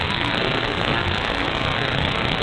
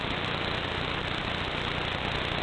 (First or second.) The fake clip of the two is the first